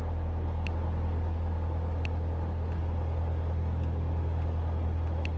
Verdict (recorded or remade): recorded